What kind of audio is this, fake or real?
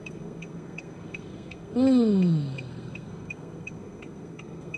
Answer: fake